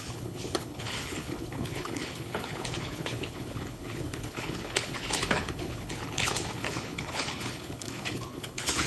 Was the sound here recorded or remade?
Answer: remade